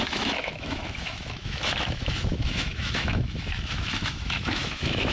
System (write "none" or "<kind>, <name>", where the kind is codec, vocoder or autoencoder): autoencoder, DAC-VAE